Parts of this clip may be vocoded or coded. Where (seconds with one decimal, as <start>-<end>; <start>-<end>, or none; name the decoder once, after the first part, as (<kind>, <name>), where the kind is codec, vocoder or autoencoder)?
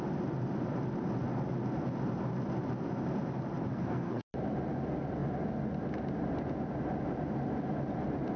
3.7-4.3 (codec, SNAC)